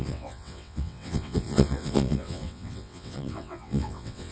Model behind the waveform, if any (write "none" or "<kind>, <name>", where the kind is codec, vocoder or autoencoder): vocoder, WaveNeXt